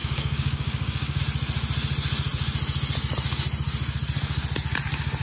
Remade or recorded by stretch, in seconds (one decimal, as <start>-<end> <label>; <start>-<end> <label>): 0.0-1.2 remade; 1.2-5.2 recorded